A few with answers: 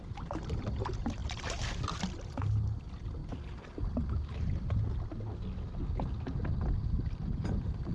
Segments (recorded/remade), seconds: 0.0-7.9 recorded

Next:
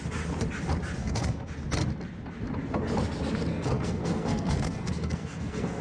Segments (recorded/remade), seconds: 0.0-1.0 recorded; 1.0-1.5 remade; 1.5-3.5 recorded; 3.5-5.8 remade

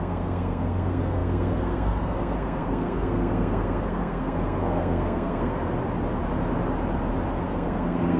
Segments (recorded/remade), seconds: 0.0-5.6 remade; 5.6-7.3 recorded; 7.3-8.2 remade

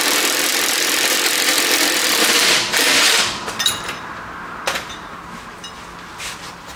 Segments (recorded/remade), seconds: 0.0-6.8 recorded

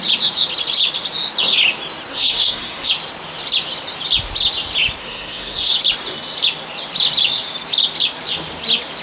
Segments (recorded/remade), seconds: 0.0-2.1 recorded; 2.1-2.9 remade; 2.9-5.0 recorded; 5.0-5.7 remade; 5.7-9.0 recorded

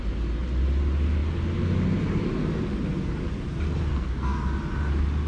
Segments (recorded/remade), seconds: 0.0-3.9 recorded; 3.9-4.4 remade; 4.4-5.3 recorded

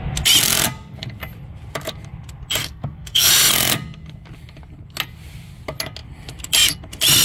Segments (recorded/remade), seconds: 0.0-2.6 recorded; 2.6-3.3 remade; 3.3-7.2 recorded